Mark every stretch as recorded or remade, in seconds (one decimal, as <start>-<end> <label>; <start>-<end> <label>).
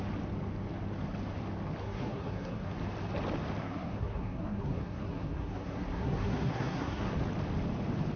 0.0-1.8 recorded; 1.8-2.7 remade; 2.7-3.6 recorded; 3.6-7.1 remade; 7.1-8.2 recorded